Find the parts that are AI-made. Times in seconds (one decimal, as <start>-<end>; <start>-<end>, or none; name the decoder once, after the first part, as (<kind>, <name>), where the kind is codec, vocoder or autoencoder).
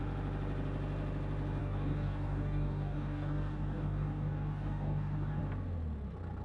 1.6-5.4 (codec, DAC)